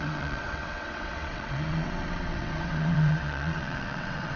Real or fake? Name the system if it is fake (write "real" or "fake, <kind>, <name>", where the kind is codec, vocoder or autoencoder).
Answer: fake, vocoder, WaveNeXt